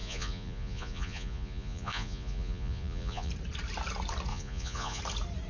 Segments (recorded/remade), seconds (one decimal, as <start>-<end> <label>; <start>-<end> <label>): 0.0-3.3 remade; 3.3-4.3 recorded; 4.3-5.0 remade; 5.0-5.5 recorded